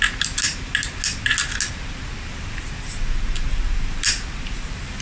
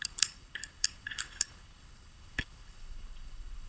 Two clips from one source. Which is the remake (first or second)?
second